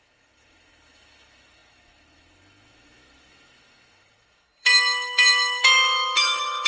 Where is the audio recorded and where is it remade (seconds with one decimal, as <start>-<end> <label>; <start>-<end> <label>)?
0.0-6.7 remade